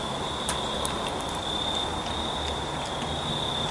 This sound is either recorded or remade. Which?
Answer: recorded